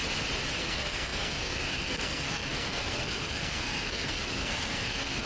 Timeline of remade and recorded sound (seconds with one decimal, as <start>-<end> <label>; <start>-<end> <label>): 0.0-0.6 recorded; 0.6-5.3 remade